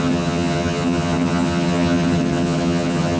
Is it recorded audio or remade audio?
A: remade